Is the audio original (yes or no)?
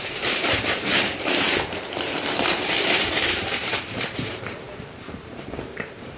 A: no